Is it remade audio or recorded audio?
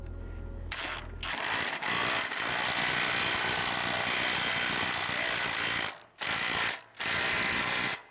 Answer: recorded